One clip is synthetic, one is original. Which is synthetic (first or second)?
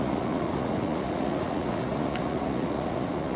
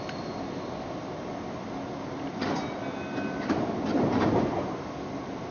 first